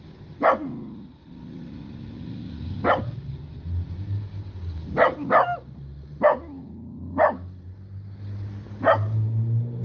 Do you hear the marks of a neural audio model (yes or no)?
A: no